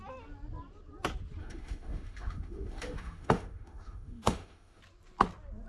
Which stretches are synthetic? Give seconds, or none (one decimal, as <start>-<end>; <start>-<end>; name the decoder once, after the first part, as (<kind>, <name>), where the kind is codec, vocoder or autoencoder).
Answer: 1.4-4.8 (autoencoder, DAC-VAE)